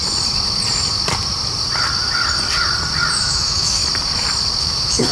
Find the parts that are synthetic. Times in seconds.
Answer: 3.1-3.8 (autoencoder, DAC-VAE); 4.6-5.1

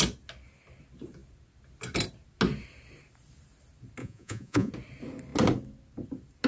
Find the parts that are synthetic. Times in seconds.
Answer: 4.0-4.7 (vocoder, Vocos)